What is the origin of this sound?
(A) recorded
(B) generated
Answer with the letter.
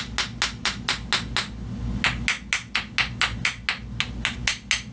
A